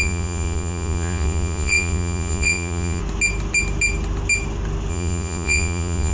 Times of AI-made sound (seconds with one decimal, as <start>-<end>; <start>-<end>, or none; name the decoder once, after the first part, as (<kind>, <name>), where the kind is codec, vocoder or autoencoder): 0.0-3.0 (vocoder, Vocos); 4.9-6.1